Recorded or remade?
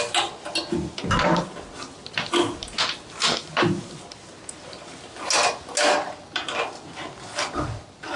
recorded